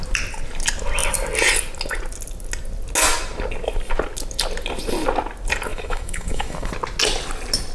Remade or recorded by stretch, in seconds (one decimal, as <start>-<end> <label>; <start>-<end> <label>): 0.0-5.7 recorded; 5.7-6.7 remade; 6.7-7.7 recorded

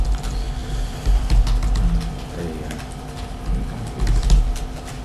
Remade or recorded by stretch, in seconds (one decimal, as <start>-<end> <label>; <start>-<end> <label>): 0.0-5.0 recorded

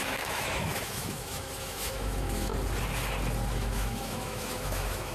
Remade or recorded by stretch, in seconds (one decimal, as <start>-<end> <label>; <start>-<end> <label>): 0.0-2.5 remade; 2.5-3.5 recorded; 3.5-5.1 remade

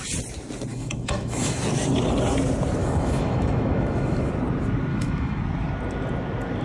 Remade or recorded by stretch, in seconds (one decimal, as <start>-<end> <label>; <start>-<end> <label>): 0.0-0.7 recorded; 0.7-1.6 remade; 1.6-2.8 recorded; 2.8-4.3 remade; 4.3-4.9 recorded; 4.9-5.4 remade; 5.4-6.6 recorded

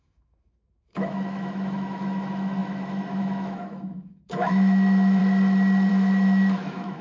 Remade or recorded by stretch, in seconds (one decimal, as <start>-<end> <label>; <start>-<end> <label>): 0.0-5.2 remade; 5.2-5.9 recorded; 5.9-7.0 remade

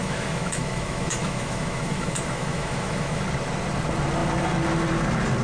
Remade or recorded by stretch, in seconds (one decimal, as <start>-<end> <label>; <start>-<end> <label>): 0.0-3.2 remade; 3.2-5.4 recorded

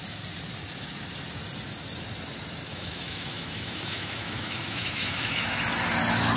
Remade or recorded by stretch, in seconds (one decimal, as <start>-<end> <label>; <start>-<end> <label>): 0.0-2.7 recorded; 2.7-5.6 remade; 5.6-6.4 recorded